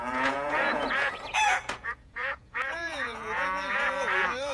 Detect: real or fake fake